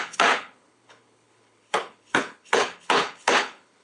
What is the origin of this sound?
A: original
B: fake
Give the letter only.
B